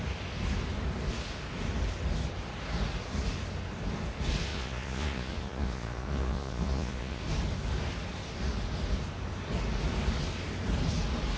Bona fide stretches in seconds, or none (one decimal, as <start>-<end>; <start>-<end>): 0.0-4.5; 7.2-11.4